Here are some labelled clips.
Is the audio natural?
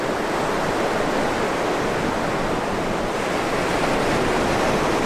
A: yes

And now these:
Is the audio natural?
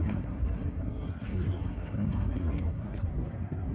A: no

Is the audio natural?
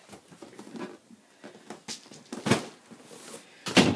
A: yes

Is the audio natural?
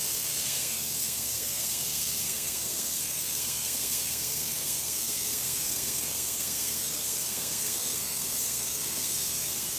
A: no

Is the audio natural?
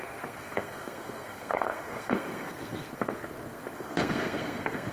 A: no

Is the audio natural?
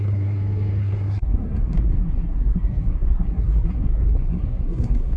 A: no